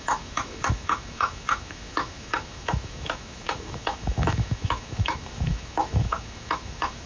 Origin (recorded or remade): remade